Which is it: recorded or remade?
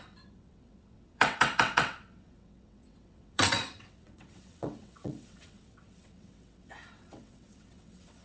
remade